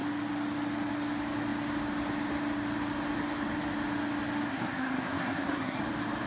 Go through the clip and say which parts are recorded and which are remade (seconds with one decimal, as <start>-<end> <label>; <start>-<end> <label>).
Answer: 0.0-4.5 recorded; 4.5-5.8 remade; 5.8-6.3 recorded